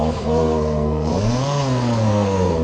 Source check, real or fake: fake